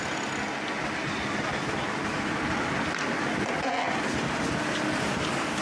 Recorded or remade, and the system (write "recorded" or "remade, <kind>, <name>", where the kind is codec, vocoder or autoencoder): recorded